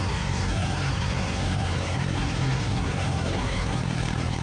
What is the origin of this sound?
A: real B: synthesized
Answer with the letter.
B